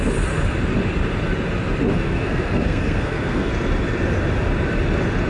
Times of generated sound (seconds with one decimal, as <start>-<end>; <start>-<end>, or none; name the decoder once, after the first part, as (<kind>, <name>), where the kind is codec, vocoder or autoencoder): 1.9-3.5 (codec, SNAC)

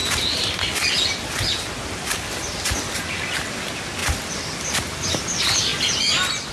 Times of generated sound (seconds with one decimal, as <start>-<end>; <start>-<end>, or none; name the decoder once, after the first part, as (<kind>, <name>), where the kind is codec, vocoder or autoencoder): none

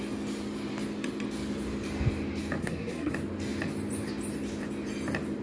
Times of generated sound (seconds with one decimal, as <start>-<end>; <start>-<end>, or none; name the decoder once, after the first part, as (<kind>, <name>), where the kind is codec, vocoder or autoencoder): 2.6-3.1 (codec, SNAC)

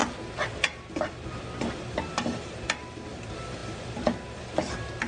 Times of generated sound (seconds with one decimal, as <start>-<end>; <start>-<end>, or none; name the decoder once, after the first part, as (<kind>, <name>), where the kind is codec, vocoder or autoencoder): none

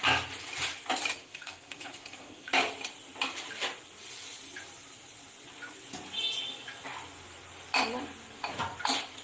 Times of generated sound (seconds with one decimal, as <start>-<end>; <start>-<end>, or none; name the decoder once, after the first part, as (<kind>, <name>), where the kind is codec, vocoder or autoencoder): 1.2-2.5 (codec, SNAC)

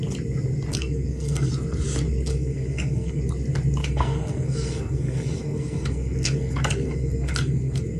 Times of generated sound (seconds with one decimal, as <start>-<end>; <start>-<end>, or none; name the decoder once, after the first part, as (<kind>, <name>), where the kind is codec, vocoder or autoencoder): 0.7-1.5 (codec, SNAC); 2.3-3.2; 3.8-8.0

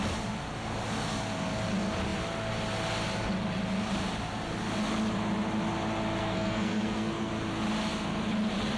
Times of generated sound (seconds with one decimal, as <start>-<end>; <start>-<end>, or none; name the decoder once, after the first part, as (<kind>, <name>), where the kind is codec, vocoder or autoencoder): 6.2-7.3 (codec, SNAC)

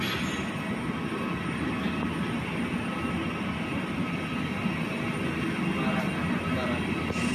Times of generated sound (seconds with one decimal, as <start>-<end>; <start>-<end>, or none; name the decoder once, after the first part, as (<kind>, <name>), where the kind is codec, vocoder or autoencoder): none